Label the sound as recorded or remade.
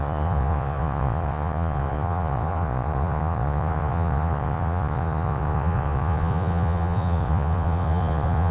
remade